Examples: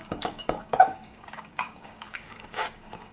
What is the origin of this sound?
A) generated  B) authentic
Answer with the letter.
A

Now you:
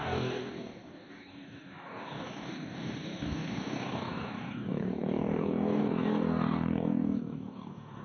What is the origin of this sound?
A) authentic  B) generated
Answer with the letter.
B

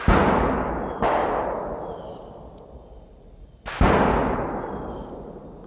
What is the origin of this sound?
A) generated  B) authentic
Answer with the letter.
B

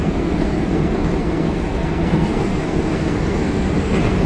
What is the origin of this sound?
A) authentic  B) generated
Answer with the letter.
B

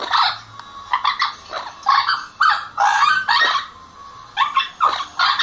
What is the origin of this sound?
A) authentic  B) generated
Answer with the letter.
A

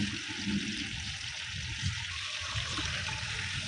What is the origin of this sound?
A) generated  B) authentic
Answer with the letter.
B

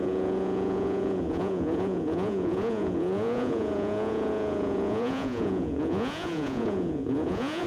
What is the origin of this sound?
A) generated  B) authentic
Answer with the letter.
A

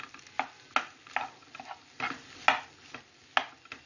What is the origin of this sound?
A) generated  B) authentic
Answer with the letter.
B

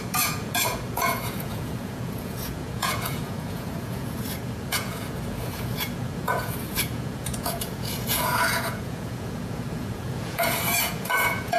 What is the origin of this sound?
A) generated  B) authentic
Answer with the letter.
A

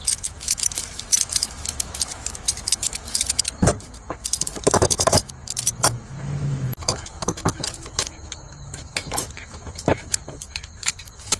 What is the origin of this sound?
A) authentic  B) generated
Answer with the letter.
B